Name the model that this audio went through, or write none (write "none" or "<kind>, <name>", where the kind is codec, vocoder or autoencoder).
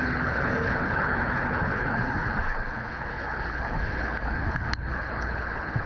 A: codec, HILCodec